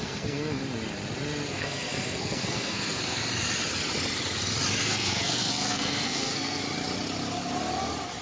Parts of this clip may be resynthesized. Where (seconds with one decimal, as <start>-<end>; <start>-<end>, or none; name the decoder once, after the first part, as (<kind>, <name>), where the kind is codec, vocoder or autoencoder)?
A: 0.0-0.6 (codec, SNAC); 1.5-3.2; 4.8-6.6